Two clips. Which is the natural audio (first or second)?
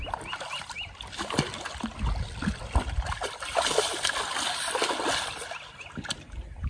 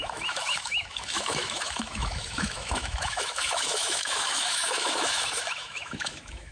first